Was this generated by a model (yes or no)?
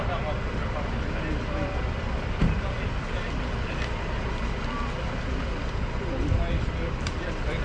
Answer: no